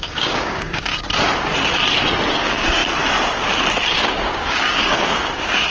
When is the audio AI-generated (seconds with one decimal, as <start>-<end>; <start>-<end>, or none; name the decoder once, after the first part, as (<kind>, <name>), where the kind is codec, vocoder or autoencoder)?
0.0-0.9 (codec, DAC); 2.3-2.8; 3.9-5.7